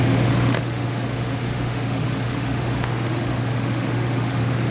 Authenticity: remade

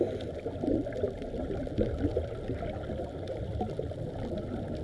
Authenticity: recorded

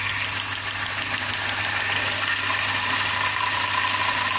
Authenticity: recorded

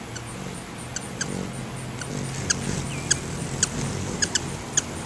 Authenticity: recorded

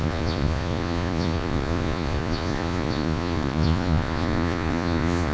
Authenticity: remade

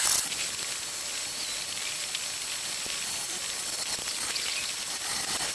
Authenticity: recorded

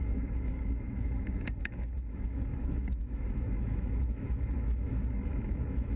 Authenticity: remade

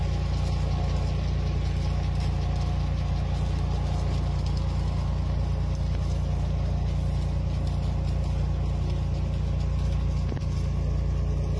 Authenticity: recorded